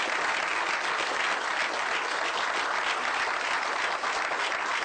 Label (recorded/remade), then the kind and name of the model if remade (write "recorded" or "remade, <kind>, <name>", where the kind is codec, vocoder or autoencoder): recorded